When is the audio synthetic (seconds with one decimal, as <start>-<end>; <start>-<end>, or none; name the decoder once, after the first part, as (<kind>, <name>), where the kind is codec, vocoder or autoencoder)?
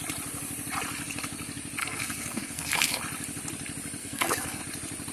1.8-3.0 (codec, SNAC); 4.0-4.6